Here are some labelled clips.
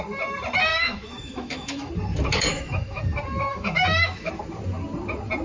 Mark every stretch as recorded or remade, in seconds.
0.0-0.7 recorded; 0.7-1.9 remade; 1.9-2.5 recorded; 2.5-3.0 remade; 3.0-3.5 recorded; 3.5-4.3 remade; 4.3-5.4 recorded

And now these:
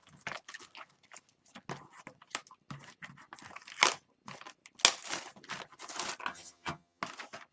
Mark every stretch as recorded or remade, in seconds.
0.0-6.3 recorded; 6.3-7.0 remade; 7.0-7.5 recorded

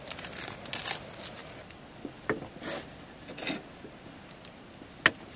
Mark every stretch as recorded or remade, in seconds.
0.0-5.4 recorded

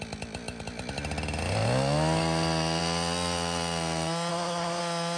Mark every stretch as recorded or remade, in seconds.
0.0-4.3 recorded; 4.3-4.8 remade; 4.8-5.2 recorded

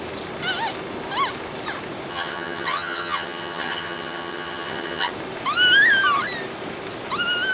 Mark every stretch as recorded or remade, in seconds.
0.0-2.1 recorded; 2.1-5.1 remade; 5.1-7.5 recorded

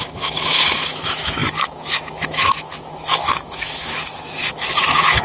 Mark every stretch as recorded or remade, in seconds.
0.0-5.2 remade

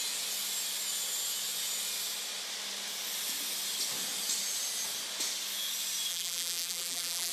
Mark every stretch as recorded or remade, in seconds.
0.0-6.1 recorded; 6.1-7.3 remade